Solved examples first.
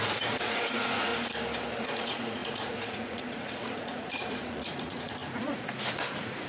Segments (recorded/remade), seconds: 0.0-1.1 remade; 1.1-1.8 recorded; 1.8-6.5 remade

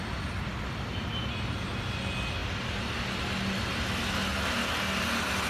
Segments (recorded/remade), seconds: 0.0-5.5 recorded

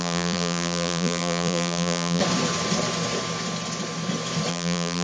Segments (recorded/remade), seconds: 0.0-2.2 remade; 2.2-4.5 recorded; 4.5-5.0 remade

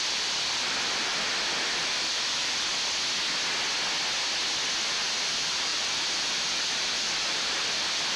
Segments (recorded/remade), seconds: 0.0-2.7 remade; 2.7-4.7 recorded; 4.7-8.2 remade

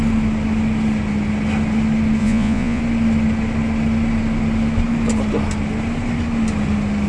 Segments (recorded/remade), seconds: 0.0-2.2 recorded; 2.2-2.8 remade; 2.8-7.1 recorded

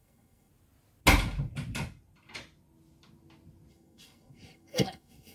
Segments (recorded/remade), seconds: 0.0-0.5 remade; 0.5-3.7 recorded; 3.7-5.3 remade